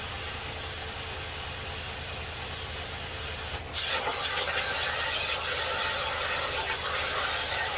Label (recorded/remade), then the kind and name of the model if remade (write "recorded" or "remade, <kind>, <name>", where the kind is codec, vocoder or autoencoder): recorded